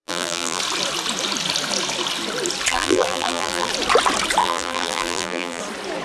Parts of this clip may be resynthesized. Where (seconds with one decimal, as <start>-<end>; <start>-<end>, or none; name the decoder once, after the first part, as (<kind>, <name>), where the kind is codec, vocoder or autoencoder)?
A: 0.0-0.6 (vocoder, BigVGAN v2); 2.7-3.7; 4.4-5.6